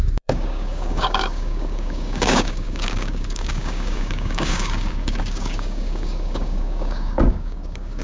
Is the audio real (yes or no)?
no